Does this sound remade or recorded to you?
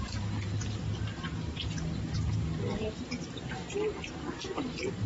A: recorded